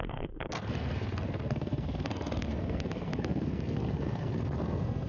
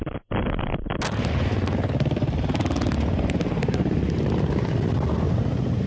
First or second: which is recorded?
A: second